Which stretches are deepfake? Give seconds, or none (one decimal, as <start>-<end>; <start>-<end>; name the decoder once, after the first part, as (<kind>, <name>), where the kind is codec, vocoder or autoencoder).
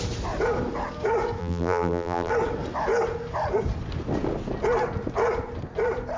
1.4-2.3 (vocoder, BigVGAN v2)